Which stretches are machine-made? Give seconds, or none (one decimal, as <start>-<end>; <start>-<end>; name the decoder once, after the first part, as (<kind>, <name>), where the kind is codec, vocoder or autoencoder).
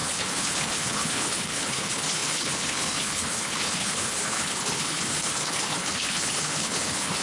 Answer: 0.0-7.2 (codec, HILCodec)